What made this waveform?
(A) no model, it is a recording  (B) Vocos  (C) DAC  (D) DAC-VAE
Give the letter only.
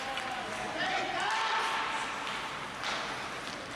A